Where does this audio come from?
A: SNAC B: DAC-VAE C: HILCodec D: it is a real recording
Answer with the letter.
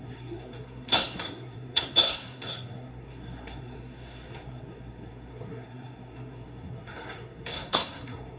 A